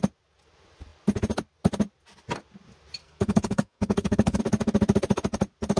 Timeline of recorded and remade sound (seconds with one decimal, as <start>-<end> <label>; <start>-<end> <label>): 0.0-3.0 recorded; 3.0-4.4 remade; 4.4-5.8 recorded